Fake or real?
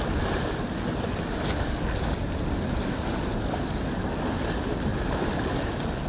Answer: real